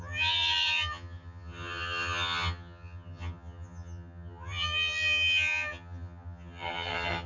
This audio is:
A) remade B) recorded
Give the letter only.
A